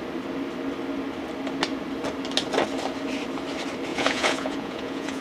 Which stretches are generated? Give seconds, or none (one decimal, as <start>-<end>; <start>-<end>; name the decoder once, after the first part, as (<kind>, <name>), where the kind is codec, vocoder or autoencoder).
3.9-5.2 (vocoder, Vocos)